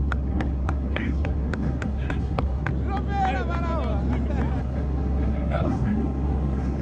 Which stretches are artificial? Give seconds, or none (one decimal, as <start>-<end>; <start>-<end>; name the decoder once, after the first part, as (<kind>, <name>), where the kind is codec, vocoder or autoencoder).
0.0-2.7 (codec, SNAC); 4.6-6.8